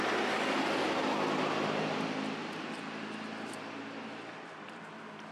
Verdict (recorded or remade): recorded